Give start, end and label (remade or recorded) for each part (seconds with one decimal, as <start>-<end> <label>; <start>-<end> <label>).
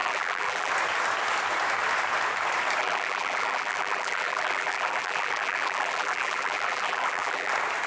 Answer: 0.0-0.7 remade; 0.7-2.8 recorded; 2.8-7.5 remade; 7.5-7.9 recorded